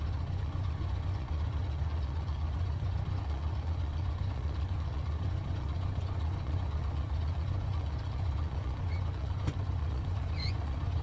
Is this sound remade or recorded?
remade